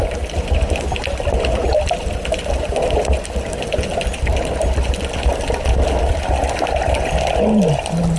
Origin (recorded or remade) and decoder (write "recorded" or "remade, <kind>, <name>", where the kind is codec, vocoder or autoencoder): recorded